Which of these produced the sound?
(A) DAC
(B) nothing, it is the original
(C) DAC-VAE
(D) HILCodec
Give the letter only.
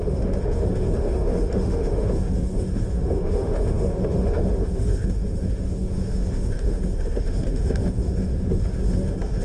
C